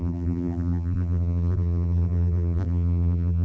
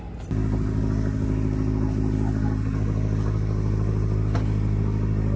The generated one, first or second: first